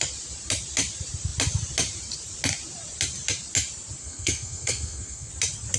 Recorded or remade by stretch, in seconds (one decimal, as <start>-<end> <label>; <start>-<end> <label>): 0.0-4.0 recorded; 4.0-5.3 remade; 5.3-5.8 recorded